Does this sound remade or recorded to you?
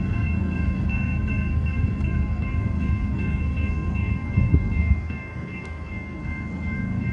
remade